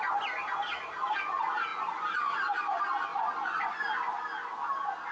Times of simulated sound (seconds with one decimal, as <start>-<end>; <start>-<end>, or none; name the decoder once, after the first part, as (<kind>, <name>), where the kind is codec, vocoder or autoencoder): 1.7-2.4 (vocoder, BigVGAN v2); 3.1-3.7